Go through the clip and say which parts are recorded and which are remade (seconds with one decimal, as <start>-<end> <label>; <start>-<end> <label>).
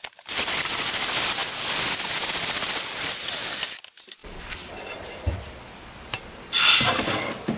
0.0-4.2 recorded; 4.2-4.7 remade; 4.7-7.6 recorded